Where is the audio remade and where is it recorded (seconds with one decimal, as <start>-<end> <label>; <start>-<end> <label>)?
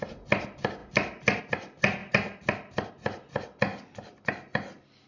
0.0-5.1 recorded